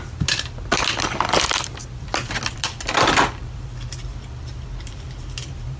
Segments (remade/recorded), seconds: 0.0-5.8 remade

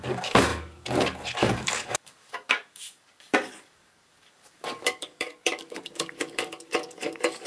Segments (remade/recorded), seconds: 0.0-7.5 remade

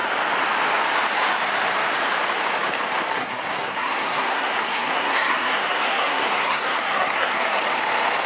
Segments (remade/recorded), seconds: 0.0-3.1 recorded; 3.1-7.6 remade; 7.6-8.3 recorded

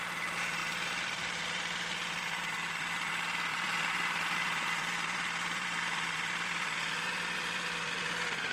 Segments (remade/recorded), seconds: 0.0-0.6 recorded; 0.6-3.1 remade; 3.1-3.5 recorded; 3.5-8.0 remade; 8.0-8.5 recorded